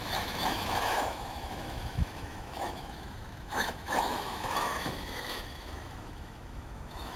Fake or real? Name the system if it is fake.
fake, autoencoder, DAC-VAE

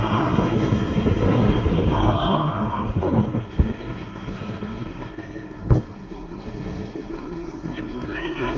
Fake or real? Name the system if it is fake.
fake, codec, SNAC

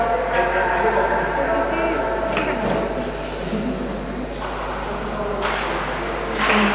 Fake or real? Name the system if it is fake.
real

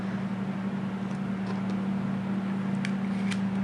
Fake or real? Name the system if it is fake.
real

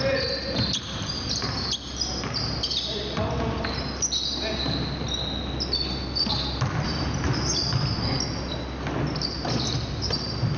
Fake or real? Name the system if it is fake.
real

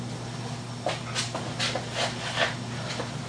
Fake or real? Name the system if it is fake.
real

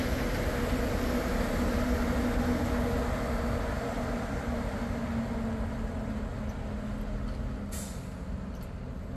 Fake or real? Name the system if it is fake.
real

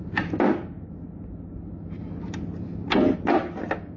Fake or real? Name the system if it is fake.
real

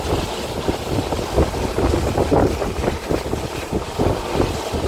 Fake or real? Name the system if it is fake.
real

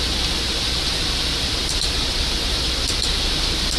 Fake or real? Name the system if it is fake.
real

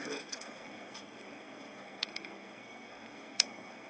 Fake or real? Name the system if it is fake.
fake, codec, SNAC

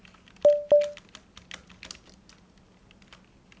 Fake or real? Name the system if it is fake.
real